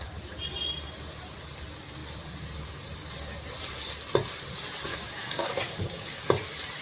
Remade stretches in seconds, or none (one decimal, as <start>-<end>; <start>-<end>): 4.9-6.3